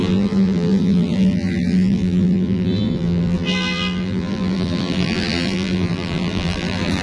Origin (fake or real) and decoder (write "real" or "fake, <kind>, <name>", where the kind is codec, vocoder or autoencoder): fake, vocoder, BigVGAN v2